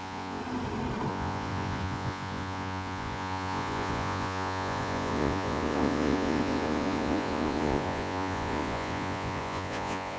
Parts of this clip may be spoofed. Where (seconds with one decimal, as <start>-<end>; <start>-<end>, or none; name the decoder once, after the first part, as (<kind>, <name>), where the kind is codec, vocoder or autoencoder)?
0.0-0.4 (vocoder, Vocos); 1.1-10.2